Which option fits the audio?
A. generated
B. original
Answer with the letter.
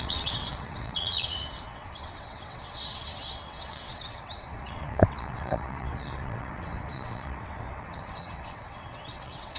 A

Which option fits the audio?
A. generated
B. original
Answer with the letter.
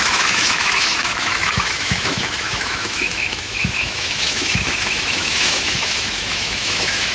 A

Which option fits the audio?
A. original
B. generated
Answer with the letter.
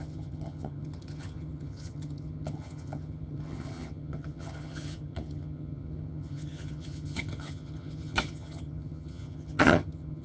B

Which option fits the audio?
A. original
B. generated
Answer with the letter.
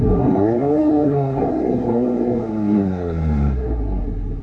B